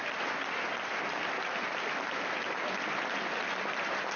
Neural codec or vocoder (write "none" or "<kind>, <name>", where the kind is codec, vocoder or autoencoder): none